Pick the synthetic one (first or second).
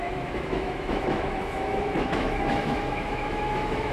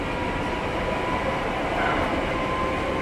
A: first